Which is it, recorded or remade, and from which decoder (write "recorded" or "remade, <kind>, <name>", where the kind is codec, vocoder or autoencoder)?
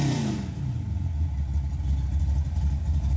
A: recorded